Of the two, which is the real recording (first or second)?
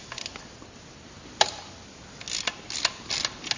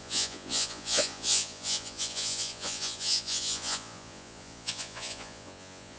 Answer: first